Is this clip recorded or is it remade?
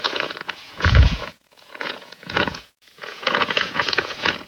remade